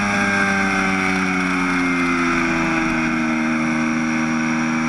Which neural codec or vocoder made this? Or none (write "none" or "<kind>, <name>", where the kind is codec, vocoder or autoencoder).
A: none